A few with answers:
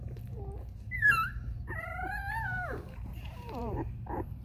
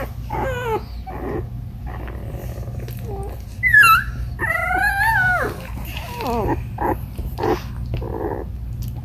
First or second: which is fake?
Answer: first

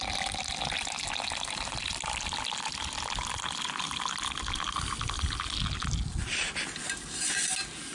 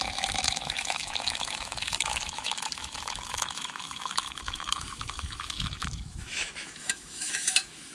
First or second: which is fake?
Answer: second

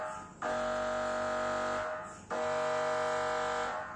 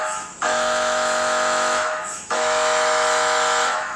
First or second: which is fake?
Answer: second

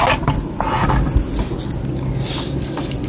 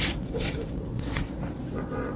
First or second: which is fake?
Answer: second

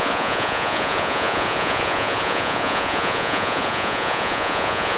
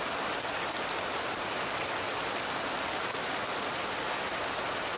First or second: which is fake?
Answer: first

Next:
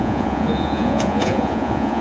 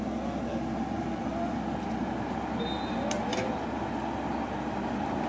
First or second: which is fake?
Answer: first